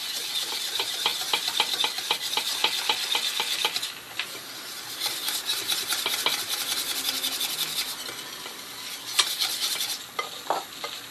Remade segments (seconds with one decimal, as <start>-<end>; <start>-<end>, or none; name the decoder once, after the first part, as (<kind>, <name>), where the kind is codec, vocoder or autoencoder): none